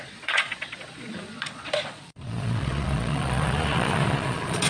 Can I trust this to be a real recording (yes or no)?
no